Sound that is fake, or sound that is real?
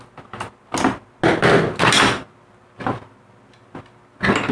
real